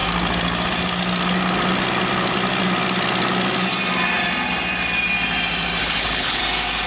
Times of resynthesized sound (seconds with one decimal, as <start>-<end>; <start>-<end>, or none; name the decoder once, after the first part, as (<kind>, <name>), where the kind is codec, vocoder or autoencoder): 5.8-6.4 (codec, HILCodec)

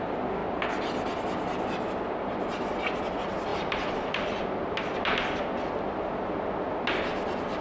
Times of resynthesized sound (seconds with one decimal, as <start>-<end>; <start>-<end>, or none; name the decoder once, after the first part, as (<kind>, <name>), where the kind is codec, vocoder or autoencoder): 3.5-4.4 (vocoder, BigVGAN v2)

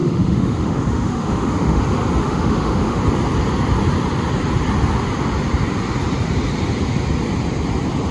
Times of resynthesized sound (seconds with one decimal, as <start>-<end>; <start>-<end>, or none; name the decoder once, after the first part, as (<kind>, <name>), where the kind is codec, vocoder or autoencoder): 0.0-1.8 (autoencoder, DAC-VAE); 2.2-3.0